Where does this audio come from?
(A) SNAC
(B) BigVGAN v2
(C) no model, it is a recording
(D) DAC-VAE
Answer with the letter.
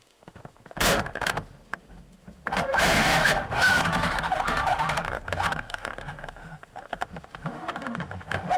D